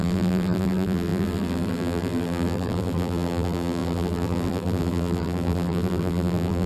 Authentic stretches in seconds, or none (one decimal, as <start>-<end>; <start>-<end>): none